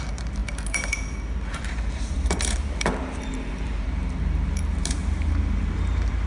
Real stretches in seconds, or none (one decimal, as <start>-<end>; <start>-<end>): none